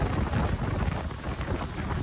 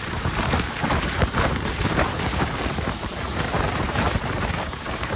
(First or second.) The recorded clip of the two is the first